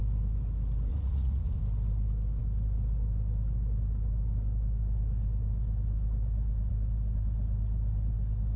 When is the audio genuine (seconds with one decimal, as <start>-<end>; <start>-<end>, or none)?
0.0-0.9; 1.6-8.6